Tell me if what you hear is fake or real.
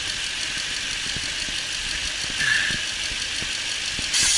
real